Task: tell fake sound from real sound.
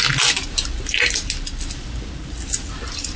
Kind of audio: real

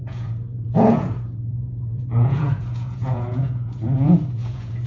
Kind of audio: fake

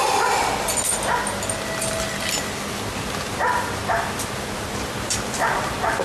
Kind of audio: real